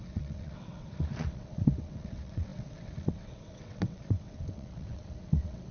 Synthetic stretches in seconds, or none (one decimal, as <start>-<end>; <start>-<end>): 0.0-5.7